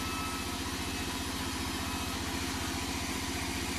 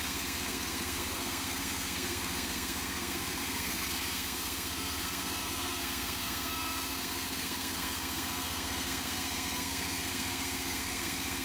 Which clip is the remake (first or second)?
second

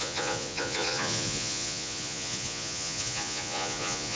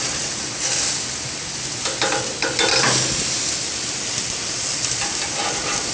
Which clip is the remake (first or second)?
first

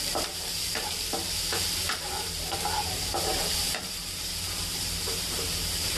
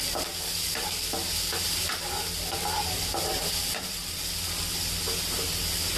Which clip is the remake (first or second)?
first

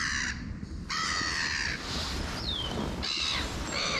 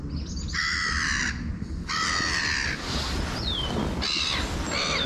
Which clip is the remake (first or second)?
first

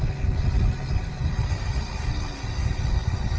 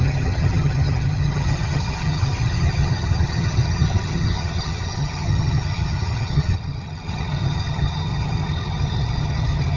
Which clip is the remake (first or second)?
second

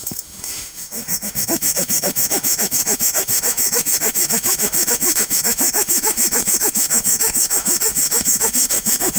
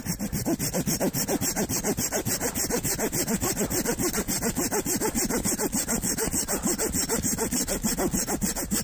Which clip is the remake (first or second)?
first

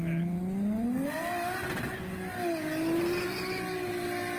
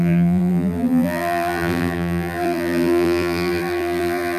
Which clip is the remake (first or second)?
second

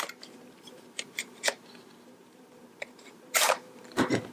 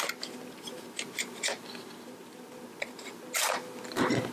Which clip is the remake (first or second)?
first